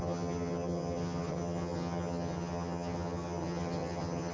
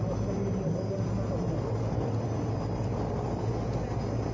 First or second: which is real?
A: second